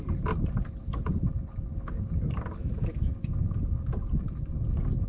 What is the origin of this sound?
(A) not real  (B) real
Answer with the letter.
B